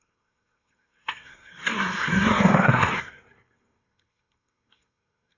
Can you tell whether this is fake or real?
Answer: fake